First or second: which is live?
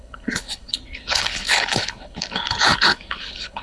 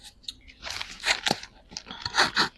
second